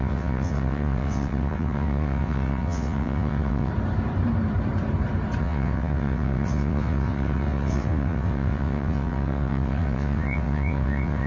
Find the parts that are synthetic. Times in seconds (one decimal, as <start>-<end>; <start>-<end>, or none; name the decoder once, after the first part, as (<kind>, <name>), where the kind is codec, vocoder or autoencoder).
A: 0.0-3.7 (vocoder, WaveNeXt); 5.4-11.3